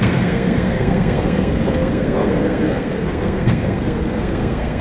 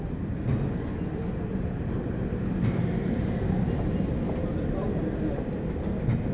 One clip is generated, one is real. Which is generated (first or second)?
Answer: first